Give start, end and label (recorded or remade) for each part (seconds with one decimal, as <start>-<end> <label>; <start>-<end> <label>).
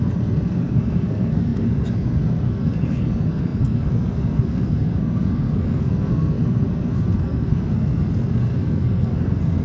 0.0-9.6 remade